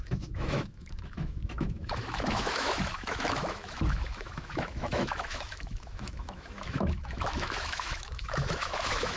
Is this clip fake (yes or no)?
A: yes